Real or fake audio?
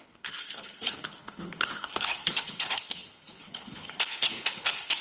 fake